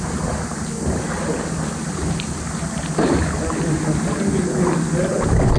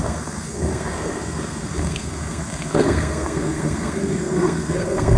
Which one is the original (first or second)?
first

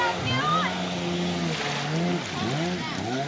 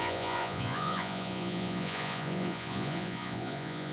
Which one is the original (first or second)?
first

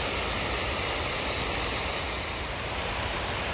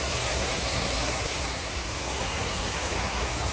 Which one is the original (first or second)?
first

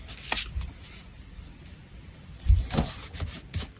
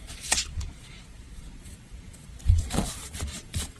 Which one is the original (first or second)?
first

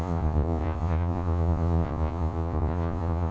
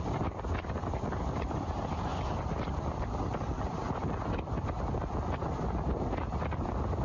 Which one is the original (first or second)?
second